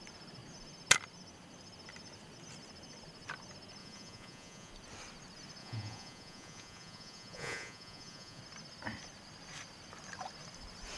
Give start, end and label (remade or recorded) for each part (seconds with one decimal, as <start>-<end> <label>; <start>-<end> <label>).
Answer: 0.0-3.8 recorded; 3.8-4.7 remade; 4.7-5.6 recorded; 5.6-8.4 remade; 8.4-11.0 recorded